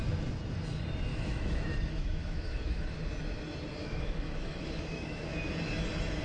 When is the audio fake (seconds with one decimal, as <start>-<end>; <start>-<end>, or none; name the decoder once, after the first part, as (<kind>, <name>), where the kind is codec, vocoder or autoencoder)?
1.1-3.0 (autoencoder, DAC-VAE); 3.8-5.5